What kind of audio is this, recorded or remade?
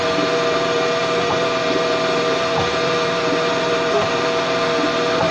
remade